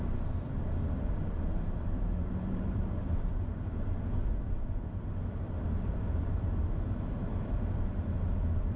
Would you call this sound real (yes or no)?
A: yes